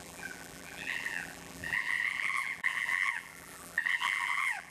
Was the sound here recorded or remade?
remade